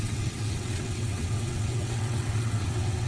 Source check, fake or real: fake